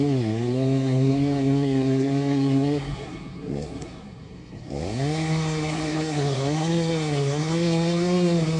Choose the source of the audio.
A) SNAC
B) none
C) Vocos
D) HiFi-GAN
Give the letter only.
A